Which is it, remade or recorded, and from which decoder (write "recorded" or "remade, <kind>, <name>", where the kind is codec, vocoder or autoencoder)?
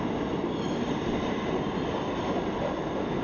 recorded